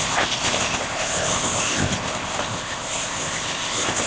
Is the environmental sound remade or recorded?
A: remade